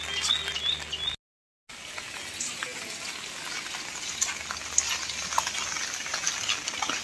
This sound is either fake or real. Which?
real